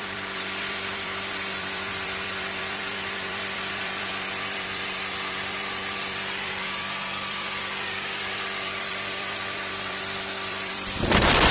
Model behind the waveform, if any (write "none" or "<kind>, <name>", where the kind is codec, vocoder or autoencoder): vocoder, BigVGAN v2